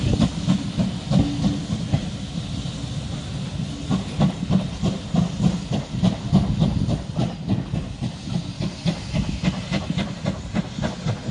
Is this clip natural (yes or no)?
yes